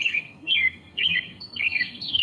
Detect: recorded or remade remade